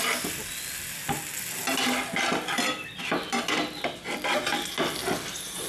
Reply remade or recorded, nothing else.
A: recorded